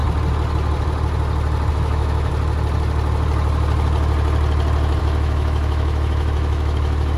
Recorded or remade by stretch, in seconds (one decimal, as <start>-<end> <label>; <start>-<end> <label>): 0.0-1.7 recorded; 1.7-2.3 remade; 2.3-5.0 recorded; 5.0-7.2 remade